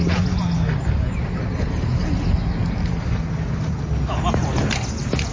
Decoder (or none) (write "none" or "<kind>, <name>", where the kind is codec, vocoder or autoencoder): none